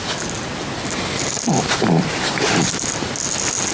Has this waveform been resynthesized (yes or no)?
no